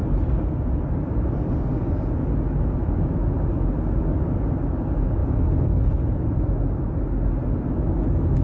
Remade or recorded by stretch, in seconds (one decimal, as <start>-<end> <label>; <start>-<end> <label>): 0.0-8.4 recorded